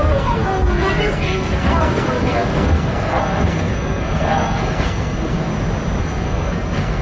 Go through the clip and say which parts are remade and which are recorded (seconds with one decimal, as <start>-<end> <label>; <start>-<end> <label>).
0.0-5.5 remade; 5.5-6.0 recorded; 6.0-7.0 remade

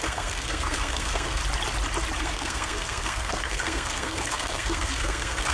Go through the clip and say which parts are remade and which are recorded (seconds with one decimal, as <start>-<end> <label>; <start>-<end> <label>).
0.0-1.4 remade; 1.4-2.2 recorded; 2.2-5.5 remade

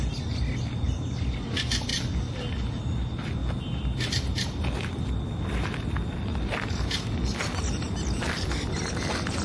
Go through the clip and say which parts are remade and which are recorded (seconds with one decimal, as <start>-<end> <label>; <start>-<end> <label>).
0.0-9.4 recorded

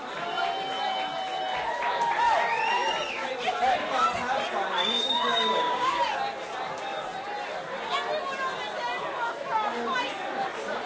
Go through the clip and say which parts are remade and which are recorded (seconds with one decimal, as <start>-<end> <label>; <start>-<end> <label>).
0.0-4.8 recorded; 4.8-6.0 remade; 6.0-10.9 recorded

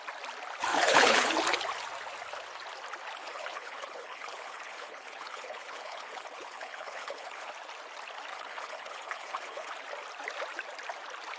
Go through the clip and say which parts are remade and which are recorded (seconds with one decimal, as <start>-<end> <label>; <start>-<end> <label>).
0.0-0.7 recorded; 0.7-1.3 remade; 1.3-3.2 recorded; 3.2-7.5 remade; 7.5-8.3 recorded; 8.3-9.7 remade; 9.7-11.4 recorded